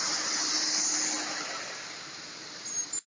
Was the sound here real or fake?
real